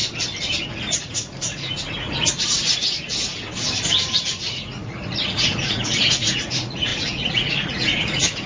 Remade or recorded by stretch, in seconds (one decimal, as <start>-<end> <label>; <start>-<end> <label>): 0.0-0.7 recorded; 0.7-2.8 remade; 2.8-4.0 recorded; 4.0-8.5 remade